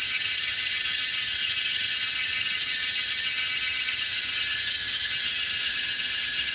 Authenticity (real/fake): fake